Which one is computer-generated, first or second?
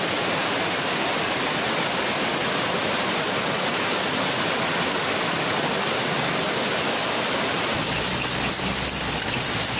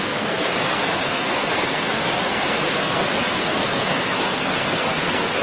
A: second